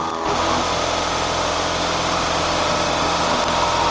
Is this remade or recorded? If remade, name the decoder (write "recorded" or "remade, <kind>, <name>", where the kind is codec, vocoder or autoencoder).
recorded